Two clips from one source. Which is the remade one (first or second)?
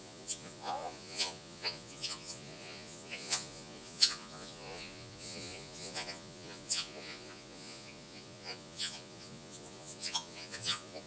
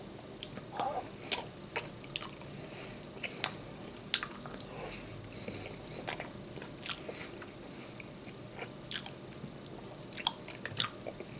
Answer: first